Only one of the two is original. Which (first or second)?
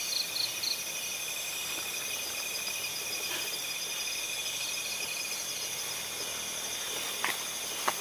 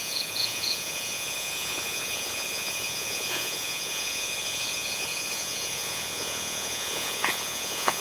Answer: first